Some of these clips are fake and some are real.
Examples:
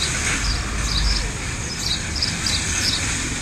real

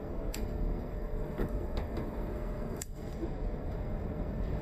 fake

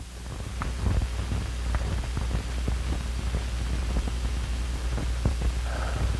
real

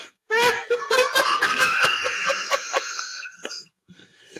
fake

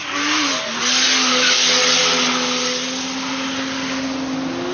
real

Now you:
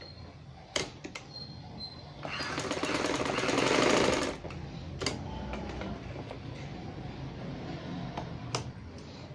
real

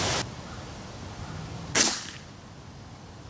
real